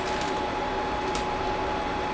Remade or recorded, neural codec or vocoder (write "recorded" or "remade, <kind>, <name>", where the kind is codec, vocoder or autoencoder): remade, vocoder, BigVGAN v2